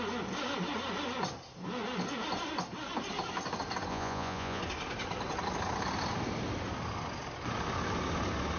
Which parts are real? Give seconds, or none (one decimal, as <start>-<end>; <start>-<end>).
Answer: 0.0-3.9; 4.6-8.6